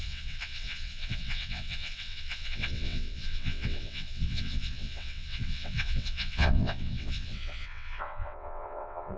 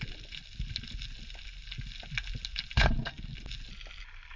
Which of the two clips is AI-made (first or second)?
first